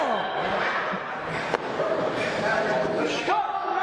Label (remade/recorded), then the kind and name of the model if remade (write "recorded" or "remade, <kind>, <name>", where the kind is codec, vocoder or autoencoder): recorded